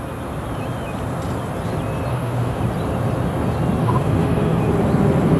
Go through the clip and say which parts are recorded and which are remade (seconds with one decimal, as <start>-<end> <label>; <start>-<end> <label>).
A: 0.0-2.1 recorded; 2.1-2.6 remade; 2.6-3.8 recorded; 3.8-4.6 remade; 4.6-5.4 recorded